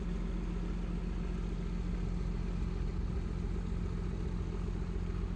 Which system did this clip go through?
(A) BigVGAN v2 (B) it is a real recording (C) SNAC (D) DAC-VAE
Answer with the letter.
B